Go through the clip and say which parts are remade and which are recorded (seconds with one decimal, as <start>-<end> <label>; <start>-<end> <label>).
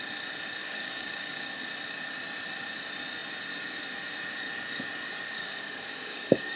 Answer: 0.0-0.6 recorded; 0.6-1.6 remade; 1.6-5.4 recorded; 5.4-6.6 remade